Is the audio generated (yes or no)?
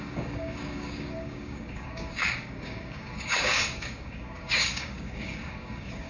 yes